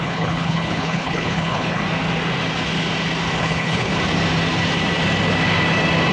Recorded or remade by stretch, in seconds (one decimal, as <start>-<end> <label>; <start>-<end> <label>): 0.0-1.8 remade; 1.8-3.4 recorded; 3.4-3.9 remade; 3.9-6.1 recorded